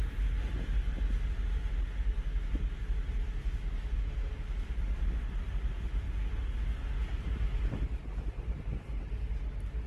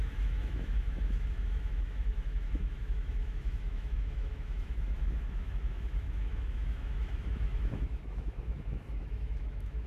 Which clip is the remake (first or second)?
second